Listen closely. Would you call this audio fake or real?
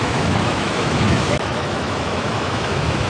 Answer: fake